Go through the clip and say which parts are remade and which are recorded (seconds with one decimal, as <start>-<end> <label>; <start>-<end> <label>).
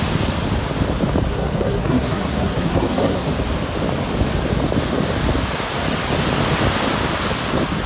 0.0-1.3 recorded; 1.3-3.3 remade; 3.3-7.9 recorded